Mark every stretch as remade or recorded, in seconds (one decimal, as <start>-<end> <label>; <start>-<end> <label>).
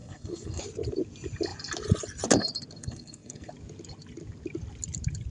0.0-0.6 remade; 0.6-2.8 recorded; 2.8-3.5 remade; 3.5-5.3 recorded